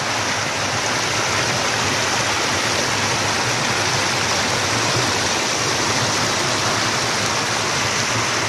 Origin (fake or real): real